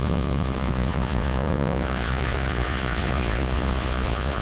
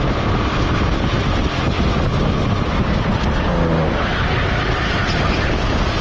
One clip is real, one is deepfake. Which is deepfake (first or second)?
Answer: first